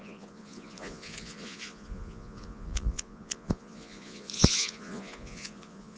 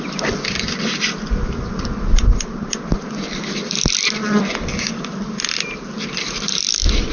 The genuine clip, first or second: second